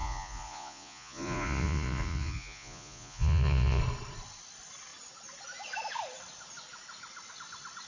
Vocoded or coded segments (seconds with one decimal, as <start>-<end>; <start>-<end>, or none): 0.0-3.8